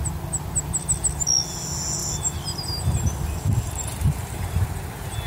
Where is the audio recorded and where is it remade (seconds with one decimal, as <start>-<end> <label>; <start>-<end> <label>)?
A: 0.0-2.0 recorded; 2.0-4.6 remade; 4.6-5.3 recorded